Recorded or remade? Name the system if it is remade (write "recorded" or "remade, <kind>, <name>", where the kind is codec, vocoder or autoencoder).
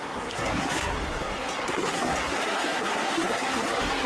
remade, codec, SNAC